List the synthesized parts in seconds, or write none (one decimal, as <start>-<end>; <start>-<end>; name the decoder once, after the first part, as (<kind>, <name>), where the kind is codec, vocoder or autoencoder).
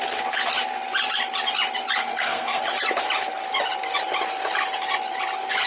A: 2.0-2.6 (codec, SNAC)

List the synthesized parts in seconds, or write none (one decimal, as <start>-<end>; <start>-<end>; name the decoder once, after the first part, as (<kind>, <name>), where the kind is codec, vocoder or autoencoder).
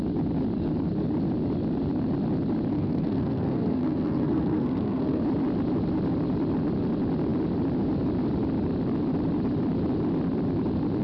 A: 2.7-5.2 (codec, SNAC)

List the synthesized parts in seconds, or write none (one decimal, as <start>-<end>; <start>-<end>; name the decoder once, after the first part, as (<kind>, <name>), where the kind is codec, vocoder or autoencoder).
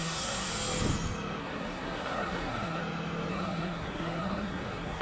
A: 0.0-0.5 (codec, SNAC); 1.4-2.8; 3.3-5.0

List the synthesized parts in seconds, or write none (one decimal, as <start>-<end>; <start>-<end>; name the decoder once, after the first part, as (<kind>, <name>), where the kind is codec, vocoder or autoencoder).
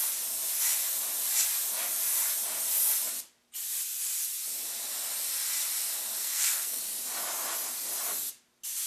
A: 6.2-6.8 (codec, SNAC)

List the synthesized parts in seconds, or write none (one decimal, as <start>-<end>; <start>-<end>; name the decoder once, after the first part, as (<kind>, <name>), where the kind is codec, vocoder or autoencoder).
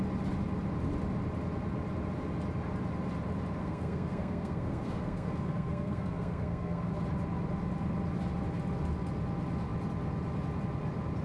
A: 3.6-6.9 (codec, SNAC)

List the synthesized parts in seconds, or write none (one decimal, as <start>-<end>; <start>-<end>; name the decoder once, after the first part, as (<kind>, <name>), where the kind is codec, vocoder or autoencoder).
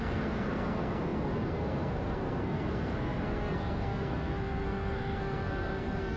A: 0.0-6.2 (codec, SNAC)